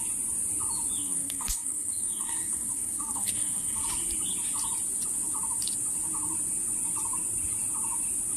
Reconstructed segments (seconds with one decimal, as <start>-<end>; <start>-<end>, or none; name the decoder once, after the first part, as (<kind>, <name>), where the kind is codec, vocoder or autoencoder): 1.0-3.8 (codec, SNAC)